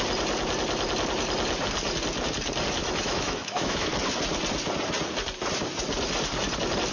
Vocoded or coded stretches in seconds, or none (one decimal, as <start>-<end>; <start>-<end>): 2.8-3.9